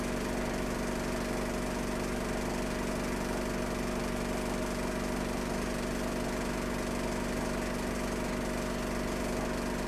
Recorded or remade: recorded